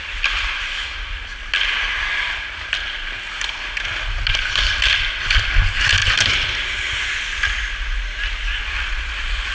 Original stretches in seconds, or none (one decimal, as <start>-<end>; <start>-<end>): 0.0-9.5